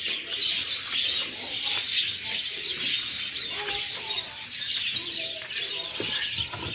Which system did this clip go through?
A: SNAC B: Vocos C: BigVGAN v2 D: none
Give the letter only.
D